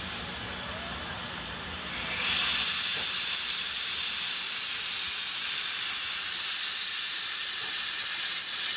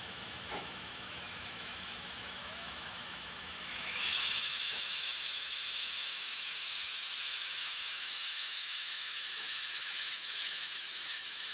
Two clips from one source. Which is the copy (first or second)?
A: second